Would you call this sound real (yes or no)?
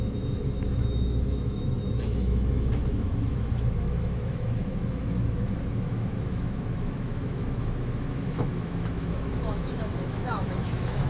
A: no